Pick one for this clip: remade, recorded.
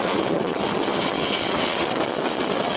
remade